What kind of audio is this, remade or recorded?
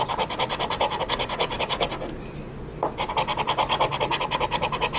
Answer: recorded